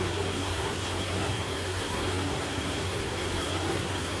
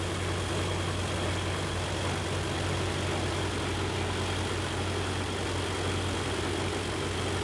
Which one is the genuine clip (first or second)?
second